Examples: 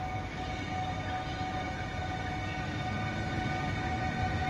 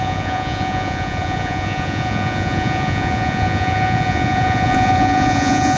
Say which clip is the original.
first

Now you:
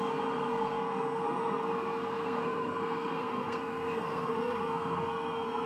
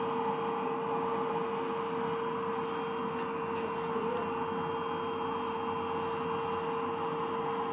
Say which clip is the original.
second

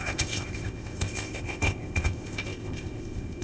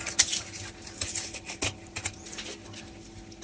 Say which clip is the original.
second